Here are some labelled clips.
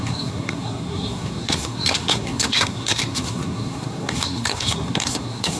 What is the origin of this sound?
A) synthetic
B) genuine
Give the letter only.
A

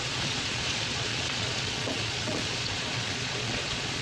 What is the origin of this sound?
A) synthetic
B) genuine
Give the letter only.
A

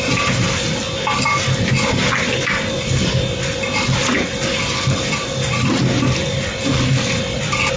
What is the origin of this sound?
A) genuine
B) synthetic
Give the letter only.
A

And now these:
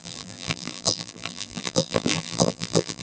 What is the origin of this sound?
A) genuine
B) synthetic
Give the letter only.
B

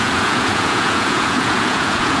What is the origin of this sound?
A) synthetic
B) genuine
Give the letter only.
A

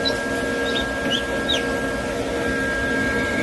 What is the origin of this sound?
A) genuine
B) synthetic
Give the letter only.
A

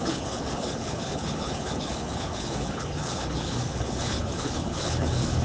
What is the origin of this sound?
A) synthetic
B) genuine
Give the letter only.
A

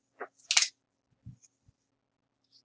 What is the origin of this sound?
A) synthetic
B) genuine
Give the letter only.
B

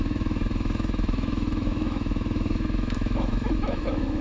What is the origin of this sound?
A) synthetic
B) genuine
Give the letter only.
A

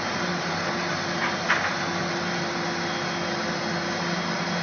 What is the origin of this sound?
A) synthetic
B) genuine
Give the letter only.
B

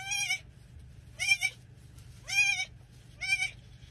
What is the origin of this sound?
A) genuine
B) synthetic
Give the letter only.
A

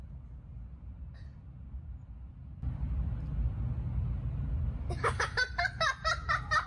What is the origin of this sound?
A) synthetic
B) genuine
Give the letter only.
B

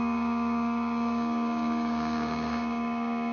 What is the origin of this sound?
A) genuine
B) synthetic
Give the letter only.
B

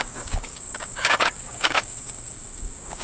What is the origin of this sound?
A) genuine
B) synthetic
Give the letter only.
B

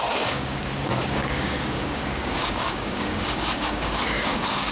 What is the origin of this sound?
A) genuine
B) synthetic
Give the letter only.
B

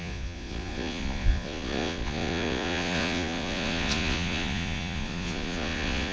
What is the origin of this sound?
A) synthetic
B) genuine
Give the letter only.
A